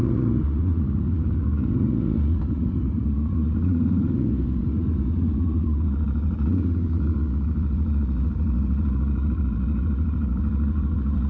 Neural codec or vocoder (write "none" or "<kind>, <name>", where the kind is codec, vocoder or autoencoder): vocoder, Vocos